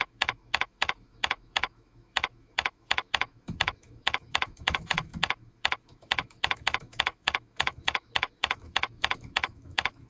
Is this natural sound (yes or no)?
no